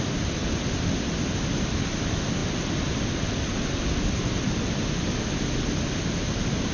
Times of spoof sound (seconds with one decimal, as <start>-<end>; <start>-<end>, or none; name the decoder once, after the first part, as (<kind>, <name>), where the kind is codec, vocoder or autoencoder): none

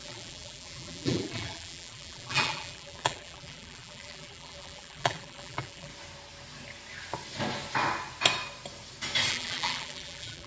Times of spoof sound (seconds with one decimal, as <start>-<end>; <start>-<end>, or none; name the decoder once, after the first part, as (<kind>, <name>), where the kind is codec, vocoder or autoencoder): 0.0-5.9 (vocoder, BigVGAN v2); 9.3-10.5